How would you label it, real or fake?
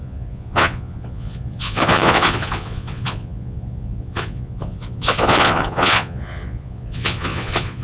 fake